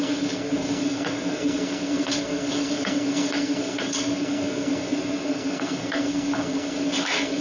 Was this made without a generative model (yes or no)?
no